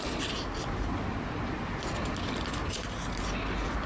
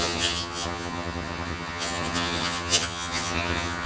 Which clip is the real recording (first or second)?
first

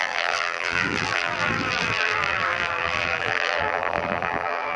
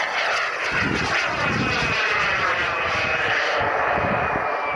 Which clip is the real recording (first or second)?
second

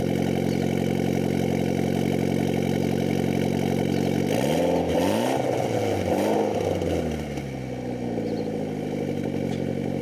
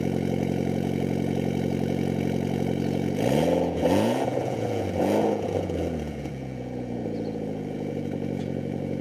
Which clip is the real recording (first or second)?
first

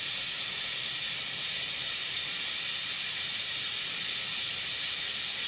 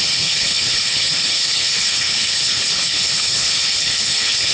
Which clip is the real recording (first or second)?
first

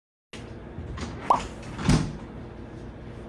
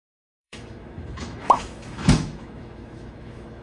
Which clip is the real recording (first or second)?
first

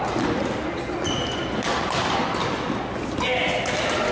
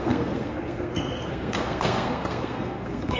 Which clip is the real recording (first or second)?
first